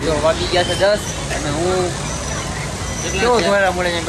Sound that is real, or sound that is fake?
real